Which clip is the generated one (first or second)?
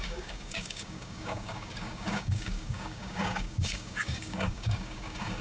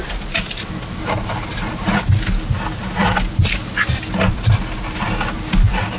first